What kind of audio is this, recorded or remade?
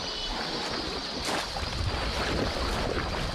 recorded